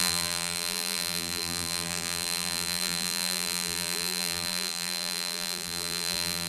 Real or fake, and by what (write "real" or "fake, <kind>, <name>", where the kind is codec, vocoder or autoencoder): fake, vocoder, BigVGAN v2